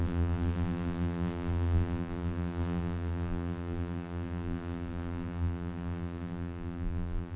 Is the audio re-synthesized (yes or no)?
yes